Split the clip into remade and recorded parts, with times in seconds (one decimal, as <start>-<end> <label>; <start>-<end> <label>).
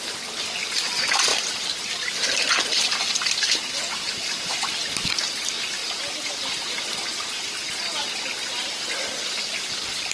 0.0-1.3 recorded; 1.3-2.1 remade; 2.1-10.1 recorded